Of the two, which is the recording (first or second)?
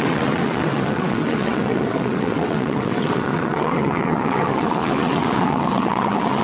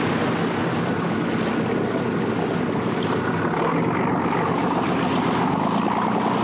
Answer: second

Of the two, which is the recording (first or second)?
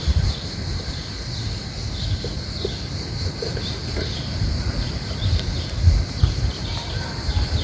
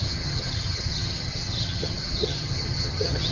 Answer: first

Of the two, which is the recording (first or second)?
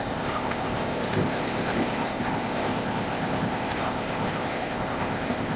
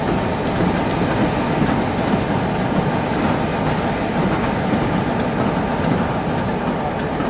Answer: second